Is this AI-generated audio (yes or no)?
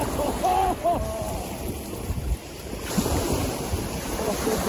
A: yes